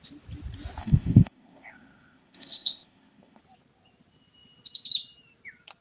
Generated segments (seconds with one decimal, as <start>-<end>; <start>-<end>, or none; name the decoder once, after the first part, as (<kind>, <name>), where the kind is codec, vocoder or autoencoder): 0.8-3.4 (codec, ZipCodec)